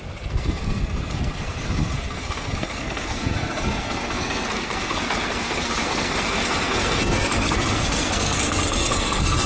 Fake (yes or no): yes